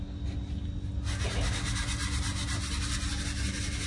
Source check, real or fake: real